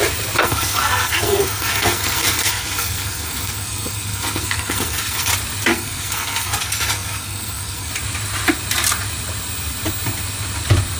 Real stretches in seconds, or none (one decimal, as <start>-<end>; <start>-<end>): 0.0-0.4; 5.3-5.7; 7.9-11.0